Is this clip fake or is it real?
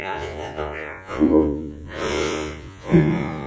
fake